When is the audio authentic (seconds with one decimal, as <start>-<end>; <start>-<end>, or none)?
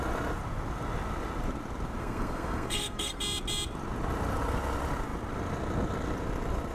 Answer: 0.0-2.0; 3.2-6.7